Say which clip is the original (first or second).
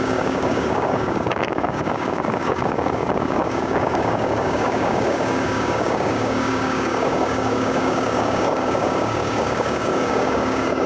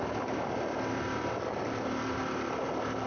second